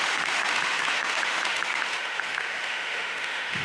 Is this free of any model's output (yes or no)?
no